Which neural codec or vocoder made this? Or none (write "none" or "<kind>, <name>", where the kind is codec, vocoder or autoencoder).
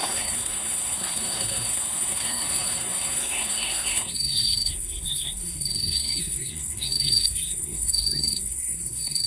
codec, SNAC